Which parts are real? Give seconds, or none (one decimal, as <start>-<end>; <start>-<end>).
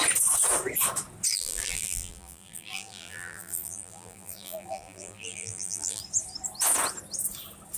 0.0-1.3; 6.0-7.8